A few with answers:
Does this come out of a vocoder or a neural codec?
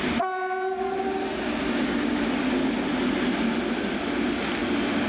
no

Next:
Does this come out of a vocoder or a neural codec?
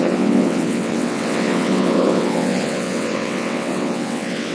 yes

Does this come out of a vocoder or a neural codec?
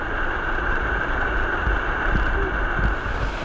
no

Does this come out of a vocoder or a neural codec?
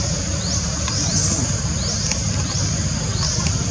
no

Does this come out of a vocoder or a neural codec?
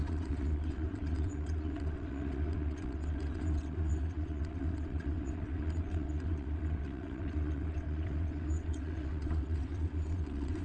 yes